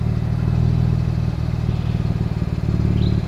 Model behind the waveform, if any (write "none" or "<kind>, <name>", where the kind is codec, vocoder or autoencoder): none